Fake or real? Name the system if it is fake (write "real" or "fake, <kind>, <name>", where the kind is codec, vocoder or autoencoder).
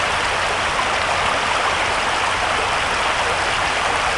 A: real